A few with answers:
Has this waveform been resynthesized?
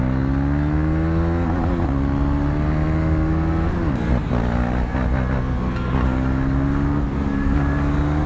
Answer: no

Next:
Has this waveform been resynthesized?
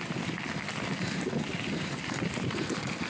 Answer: no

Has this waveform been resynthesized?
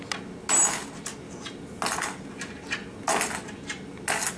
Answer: no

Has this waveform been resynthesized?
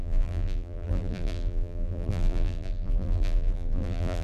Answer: yes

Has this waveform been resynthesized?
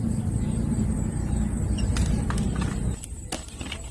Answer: no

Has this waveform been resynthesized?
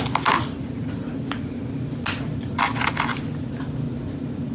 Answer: no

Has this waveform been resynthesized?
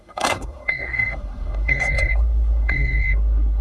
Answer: yes